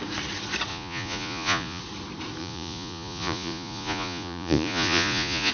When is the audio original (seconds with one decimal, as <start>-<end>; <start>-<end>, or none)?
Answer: 0.0-0.7; 1.8-2.4